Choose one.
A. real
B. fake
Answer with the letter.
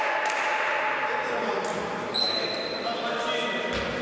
A